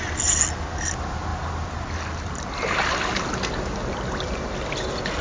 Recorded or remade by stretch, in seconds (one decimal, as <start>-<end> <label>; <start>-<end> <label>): 0.0-5.2 recorded